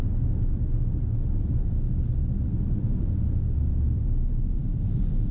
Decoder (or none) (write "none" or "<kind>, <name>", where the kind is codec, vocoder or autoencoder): none